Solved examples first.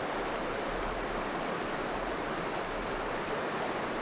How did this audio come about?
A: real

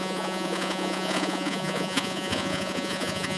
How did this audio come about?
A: fake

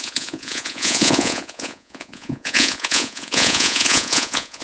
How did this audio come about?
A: fake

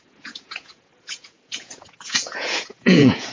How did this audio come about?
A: fake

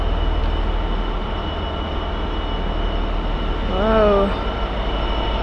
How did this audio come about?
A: real